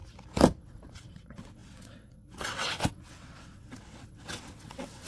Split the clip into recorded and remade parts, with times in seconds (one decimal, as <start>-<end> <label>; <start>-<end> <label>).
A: 0.0-0.6 recorded; 0.6-5.1 remade